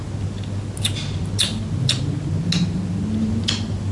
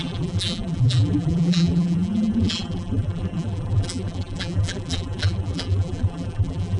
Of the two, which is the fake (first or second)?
second